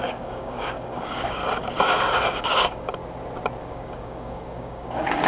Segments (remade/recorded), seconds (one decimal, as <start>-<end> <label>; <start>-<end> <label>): 0.0-1.4 remade; 1.4-2.1 recorded; 2.1-3.0 remade; 3.0-3.6 recorded; 3.6-5.3 remade